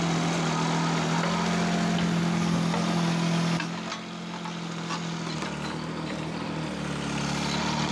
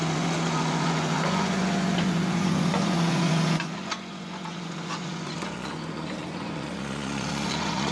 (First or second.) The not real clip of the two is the second